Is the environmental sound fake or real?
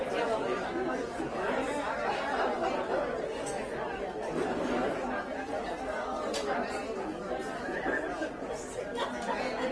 real